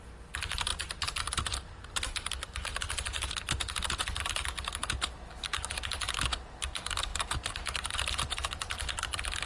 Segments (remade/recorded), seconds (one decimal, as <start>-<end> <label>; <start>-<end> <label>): 0.0-9.4 recorded